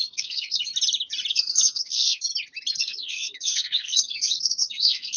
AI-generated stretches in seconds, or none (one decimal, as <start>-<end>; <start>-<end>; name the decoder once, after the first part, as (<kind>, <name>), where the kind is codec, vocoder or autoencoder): 0.0-0.7 (codec, SNAC); 1.3-2.3; 2.8-5.2